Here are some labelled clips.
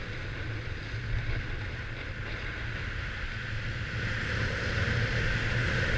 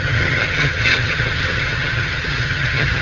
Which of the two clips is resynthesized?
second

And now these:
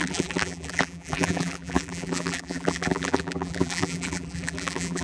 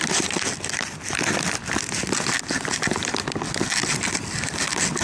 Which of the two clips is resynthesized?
first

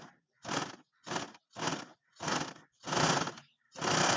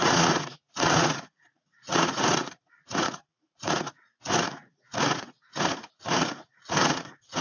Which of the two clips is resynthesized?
second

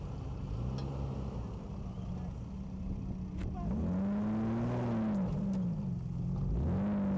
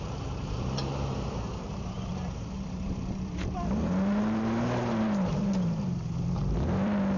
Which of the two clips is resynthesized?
second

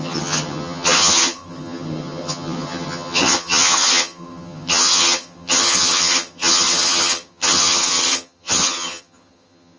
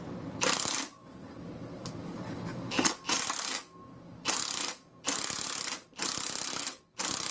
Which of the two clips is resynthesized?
first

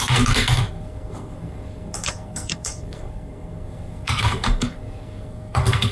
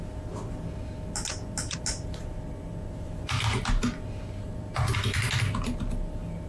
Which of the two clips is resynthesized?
first